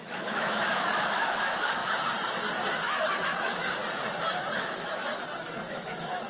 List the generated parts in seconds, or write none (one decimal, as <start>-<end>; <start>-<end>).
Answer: 0.0-1.8; 2.7-3.8; 4.6-5.1; 5.7-6.3